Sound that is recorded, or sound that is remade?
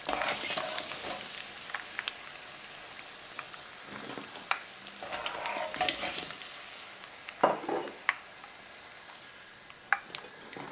recorded